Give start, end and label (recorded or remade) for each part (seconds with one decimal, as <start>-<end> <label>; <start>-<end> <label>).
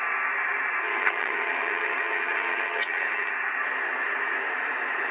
0.0-0.8 recorded; 0.8-3.3 remade; 3.3-5.1 recorded